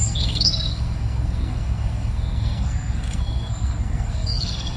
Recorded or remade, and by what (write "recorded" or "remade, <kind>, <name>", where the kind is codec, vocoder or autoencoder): remade, codec, SNAC